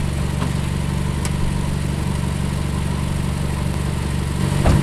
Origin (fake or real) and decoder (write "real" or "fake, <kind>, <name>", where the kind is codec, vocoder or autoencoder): real